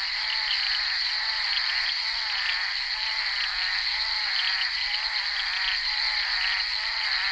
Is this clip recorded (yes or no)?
yes